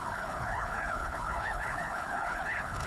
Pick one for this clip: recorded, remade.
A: remade